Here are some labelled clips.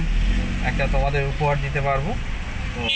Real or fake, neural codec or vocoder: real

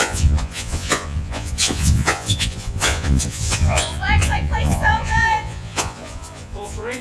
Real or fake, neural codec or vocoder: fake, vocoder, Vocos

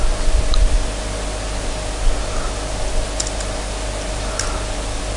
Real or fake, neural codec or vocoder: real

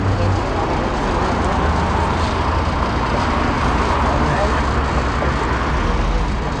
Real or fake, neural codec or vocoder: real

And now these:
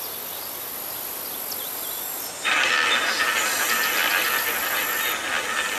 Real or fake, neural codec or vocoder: real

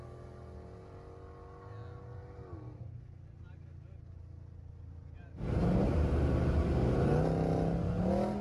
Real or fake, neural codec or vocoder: real